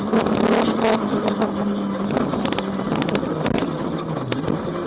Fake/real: real